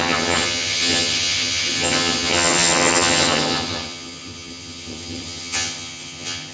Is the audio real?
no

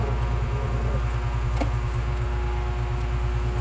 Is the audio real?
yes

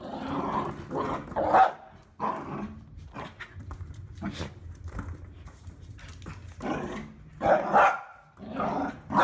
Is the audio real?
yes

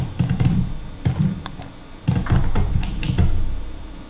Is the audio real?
yes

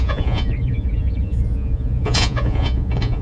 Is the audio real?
no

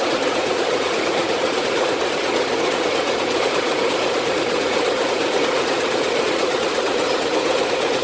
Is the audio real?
no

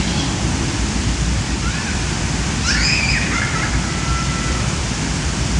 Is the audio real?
no